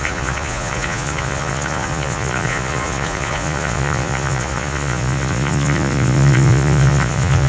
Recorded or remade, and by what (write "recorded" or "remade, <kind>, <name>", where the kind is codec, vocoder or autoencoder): remade, vocoder, Vocos